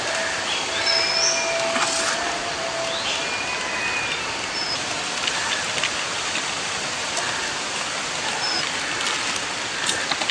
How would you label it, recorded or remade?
recorded